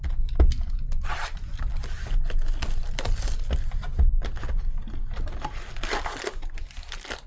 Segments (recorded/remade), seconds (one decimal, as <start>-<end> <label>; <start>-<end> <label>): 0.0-7.3 recorded